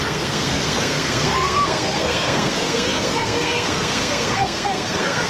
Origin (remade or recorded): remade